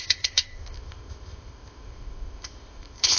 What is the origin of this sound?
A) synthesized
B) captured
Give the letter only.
A